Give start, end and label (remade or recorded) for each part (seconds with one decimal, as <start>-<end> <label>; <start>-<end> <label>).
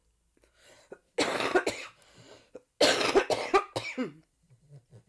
0.0-5.1 recorded